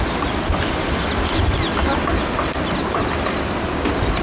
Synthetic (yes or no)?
no